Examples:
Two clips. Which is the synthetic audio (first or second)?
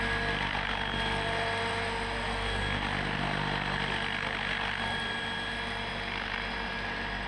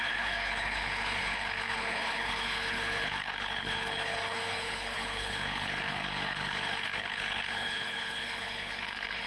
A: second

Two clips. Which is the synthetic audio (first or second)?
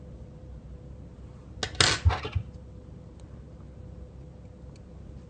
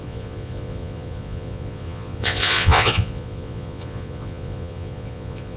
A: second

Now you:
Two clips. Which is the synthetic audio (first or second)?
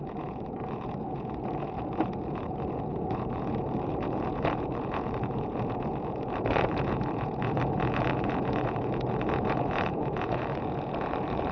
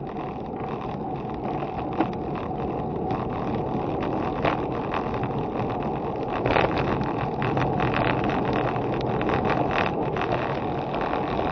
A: first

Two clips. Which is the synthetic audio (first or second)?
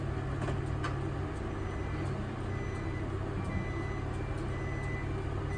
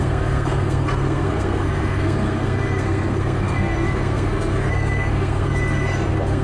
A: second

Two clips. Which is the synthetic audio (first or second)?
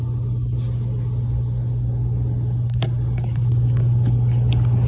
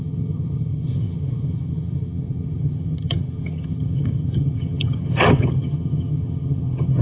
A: second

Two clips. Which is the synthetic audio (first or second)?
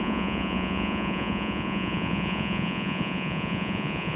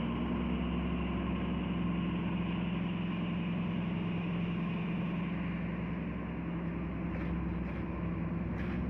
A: first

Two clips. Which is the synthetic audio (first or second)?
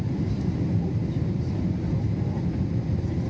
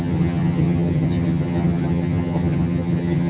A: second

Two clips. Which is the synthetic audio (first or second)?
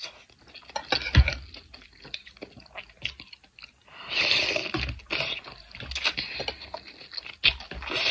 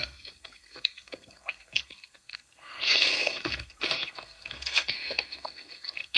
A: second